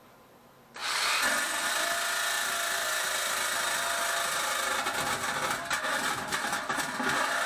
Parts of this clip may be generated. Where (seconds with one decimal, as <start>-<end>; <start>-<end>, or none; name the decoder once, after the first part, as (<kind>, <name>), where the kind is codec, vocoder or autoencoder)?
none